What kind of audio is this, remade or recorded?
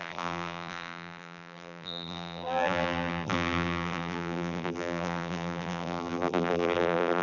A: remade